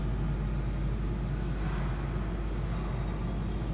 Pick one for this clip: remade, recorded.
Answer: recorded